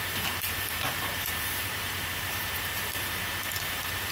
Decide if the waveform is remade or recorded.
remade